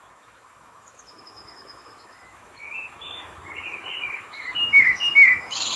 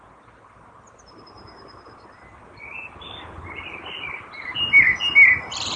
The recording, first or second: second